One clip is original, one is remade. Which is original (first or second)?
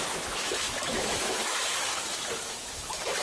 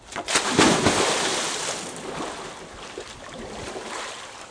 second